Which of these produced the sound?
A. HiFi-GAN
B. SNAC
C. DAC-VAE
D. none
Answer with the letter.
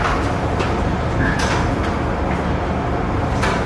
D